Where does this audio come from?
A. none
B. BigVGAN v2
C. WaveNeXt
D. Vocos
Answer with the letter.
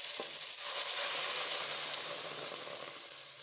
A